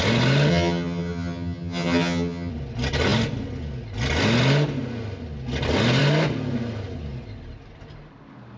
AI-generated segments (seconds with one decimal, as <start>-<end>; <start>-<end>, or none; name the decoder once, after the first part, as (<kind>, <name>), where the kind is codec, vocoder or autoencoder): 0.5-2.5 (vocoder, HiFi-GAN)